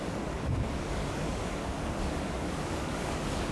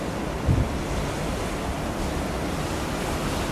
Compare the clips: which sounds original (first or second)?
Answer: second